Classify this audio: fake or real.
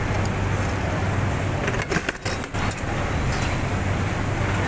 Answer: real